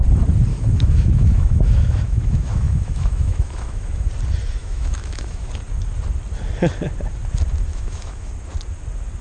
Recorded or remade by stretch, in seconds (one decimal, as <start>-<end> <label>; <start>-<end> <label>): 0.0-0.5 recorded; 0.5-4.1 remade; 4.1-4.6 recorded; 4.6-5.5 remade; 5.5-7.7 recorded; 7.7-8.3 remade; 8.3-9.2 recorded